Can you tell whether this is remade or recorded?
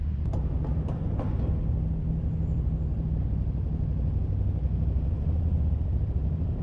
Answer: recorded